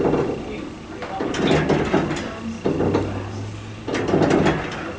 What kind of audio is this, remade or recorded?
recorded